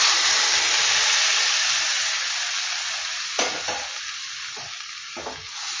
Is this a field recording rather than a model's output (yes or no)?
yes